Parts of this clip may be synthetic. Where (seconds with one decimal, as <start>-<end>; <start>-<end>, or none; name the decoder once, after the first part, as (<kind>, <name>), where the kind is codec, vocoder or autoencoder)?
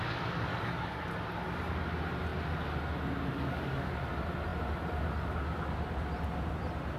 0.5-1.0 (codec, DAC); 3.3-3.9